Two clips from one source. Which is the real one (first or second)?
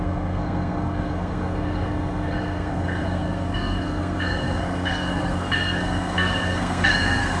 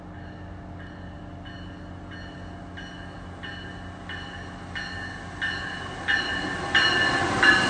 second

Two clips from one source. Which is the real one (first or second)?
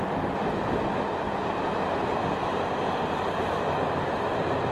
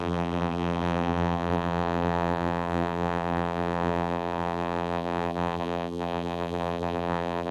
first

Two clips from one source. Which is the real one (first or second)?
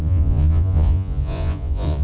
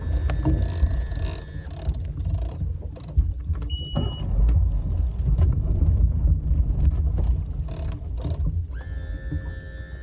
second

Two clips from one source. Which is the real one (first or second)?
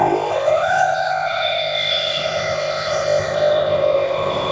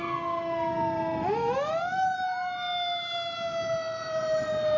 second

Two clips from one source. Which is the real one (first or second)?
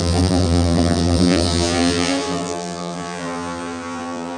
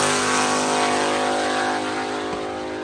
second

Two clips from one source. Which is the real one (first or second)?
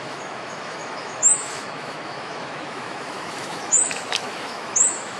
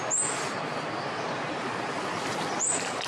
second